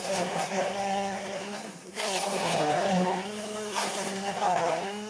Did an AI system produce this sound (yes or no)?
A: yes